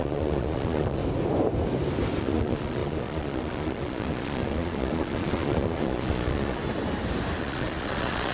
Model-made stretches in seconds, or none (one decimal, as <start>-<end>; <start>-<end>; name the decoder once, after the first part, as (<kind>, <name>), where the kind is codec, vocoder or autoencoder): 0.0-1.0 (vocoder, Vocos); 2.2-6.6; 7.4-8.3